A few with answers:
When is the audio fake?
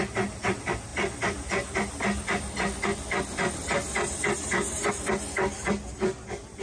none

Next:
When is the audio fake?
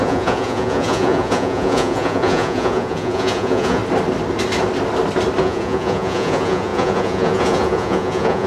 0.0-3.8 (vocoder, Vocos); 5.4-8.5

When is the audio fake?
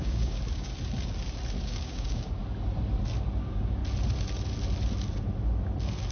0.0-0.7 (codec, DAC); 1.6-2.4; 3.3-3.8